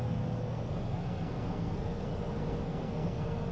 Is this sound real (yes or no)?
no